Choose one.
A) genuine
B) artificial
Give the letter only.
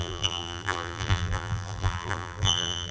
B